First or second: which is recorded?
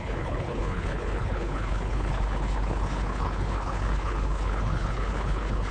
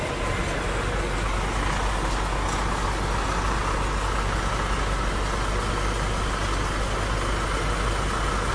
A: second